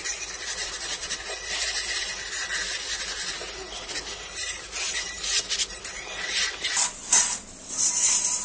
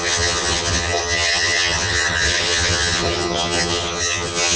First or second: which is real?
first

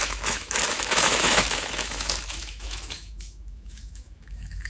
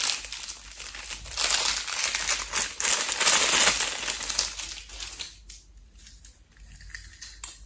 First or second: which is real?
second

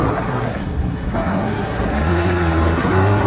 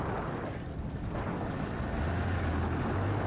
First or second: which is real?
second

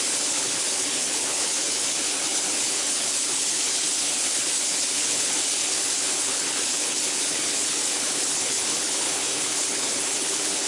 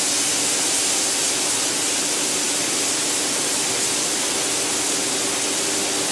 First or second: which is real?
second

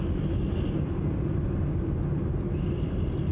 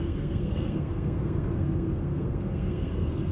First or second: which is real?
first